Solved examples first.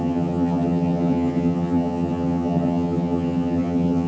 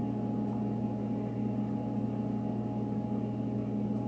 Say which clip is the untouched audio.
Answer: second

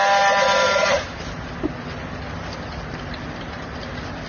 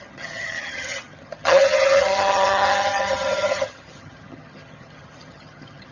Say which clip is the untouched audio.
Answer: first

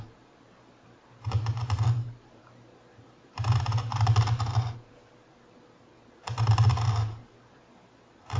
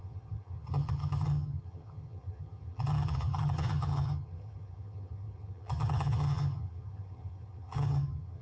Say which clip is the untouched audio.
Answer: first